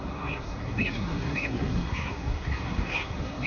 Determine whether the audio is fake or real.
fake